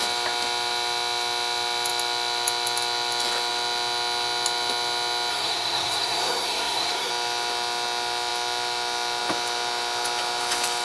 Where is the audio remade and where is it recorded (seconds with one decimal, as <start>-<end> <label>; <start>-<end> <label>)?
0.0-5.3 recorded; 5.3-7.1 remade; 7.1-10.8 recorded